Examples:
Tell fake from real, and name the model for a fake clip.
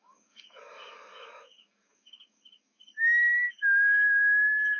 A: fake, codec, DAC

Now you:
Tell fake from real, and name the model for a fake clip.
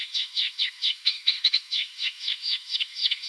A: fake, autoencoder, DAC-VAE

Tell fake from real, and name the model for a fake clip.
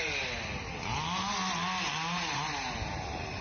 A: real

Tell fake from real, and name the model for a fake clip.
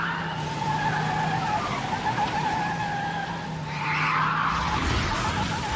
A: real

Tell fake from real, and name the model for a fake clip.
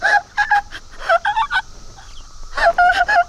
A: real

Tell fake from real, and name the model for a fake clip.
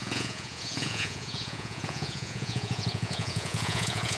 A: fake, vocoder, Vocos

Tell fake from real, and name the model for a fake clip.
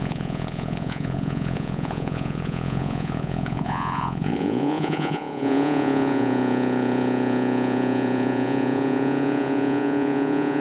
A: fake, vocoder, Vocos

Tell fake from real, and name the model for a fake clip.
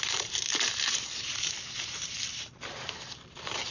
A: fake, vocoder, BigVGAN v2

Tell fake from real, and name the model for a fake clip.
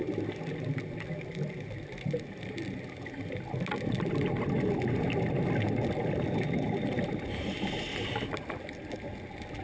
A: real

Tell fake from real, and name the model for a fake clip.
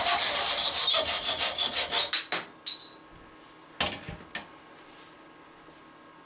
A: real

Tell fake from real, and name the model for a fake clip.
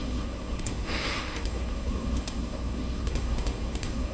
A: fake, codec, SNAC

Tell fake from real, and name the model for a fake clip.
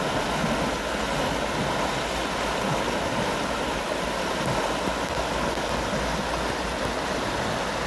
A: real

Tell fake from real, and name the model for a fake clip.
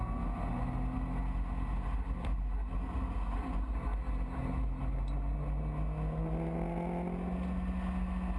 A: real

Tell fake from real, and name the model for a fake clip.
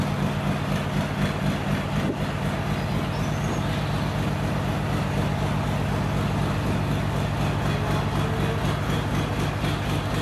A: real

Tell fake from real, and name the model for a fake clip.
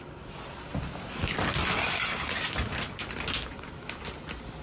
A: real